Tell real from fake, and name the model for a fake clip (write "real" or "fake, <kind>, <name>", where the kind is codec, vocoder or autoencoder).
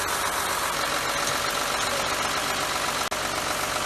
real